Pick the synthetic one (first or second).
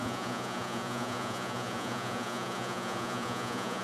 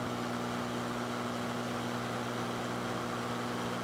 first